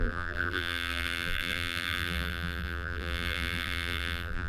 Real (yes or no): no